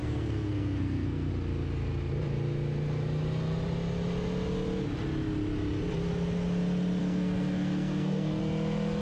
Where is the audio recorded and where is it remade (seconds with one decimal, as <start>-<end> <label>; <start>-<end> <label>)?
0.0-1.3 remade; 1.3-7.0 recorded; 7.0-8.4 remade; 8.4-9.0 recorded

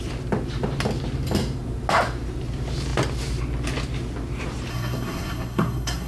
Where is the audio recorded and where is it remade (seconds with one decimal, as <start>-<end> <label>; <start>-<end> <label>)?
0.0-4.7 recorded; 4.7-6.1 remade

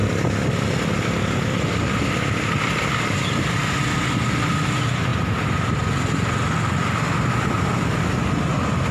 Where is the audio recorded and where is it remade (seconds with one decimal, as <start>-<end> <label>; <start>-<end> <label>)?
0.0-8.9 recorded

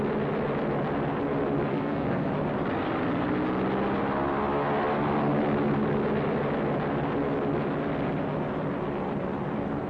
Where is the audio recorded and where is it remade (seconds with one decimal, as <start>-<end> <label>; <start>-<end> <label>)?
0.0-1.7 recorded; 1.7-2.3 remade; 2.3-9.9 recorded

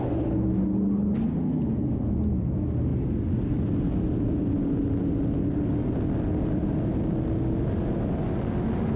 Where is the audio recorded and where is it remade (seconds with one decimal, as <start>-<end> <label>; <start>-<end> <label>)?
0.0-9.0 recorded